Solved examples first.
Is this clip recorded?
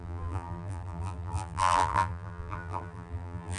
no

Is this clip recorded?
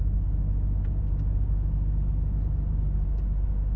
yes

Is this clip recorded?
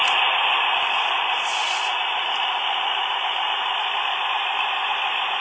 yes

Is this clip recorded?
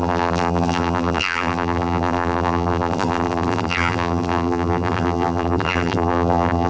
no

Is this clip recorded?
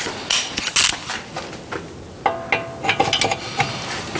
yes